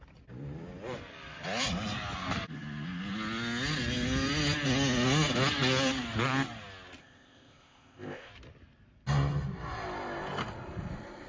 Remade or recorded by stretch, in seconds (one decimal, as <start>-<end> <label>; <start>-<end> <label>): 0.0-7.0 recorded; 7.0-8.3 remade; 8.3-11.3 recorded